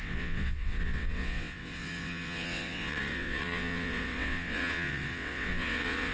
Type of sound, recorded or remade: remade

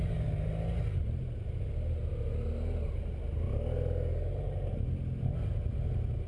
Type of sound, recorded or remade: recorded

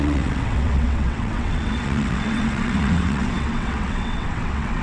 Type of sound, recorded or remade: remade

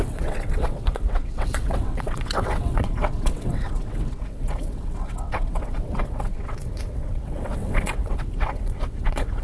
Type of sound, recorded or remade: remade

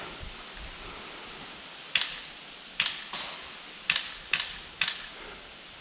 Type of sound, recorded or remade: recorded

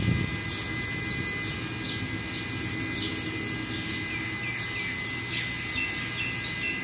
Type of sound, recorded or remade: recorded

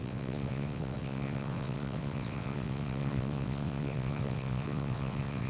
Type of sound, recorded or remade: remade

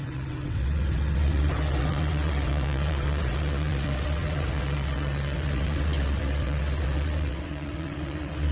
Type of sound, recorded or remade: remade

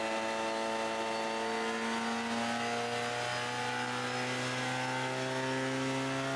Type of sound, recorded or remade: recorded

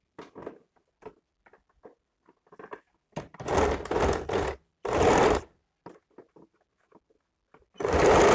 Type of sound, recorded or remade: recorded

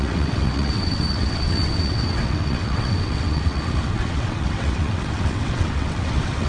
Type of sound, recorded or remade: remade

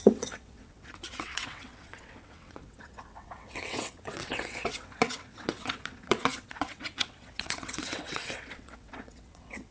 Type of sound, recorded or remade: remade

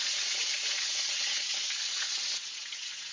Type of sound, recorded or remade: remade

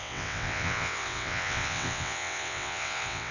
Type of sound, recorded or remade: remade